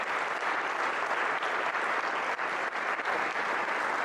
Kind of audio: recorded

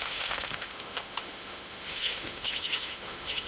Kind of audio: remade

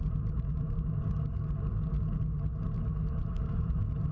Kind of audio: recorded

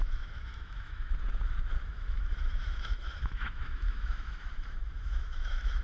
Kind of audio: remade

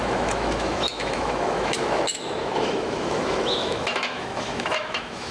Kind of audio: remade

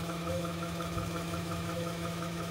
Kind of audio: remade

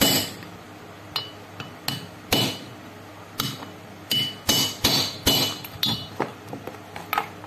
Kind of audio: recorded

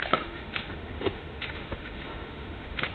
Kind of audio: remade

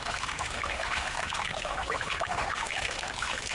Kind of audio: remade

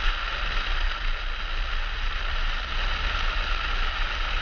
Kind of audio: recorded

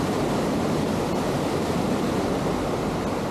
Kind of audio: recorded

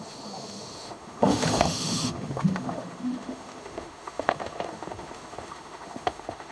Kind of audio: remade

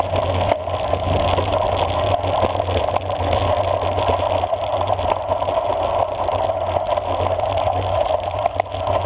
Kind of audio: recorded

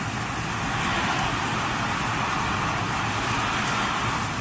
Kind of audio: recorded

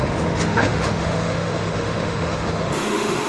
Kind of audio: remade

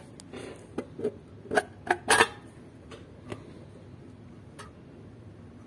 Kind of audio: recorded